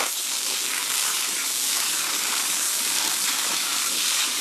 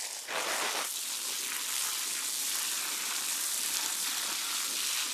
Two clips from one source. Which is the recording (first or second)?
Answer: second